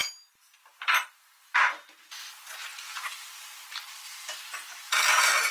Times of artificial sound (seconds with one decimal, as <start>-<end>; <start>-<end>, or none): 1.5-2.0; 2.7-3.4